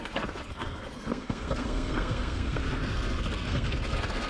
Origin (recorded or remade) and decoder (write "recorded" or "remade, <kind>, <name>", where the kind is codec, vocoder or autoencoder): remade, codec, SNAC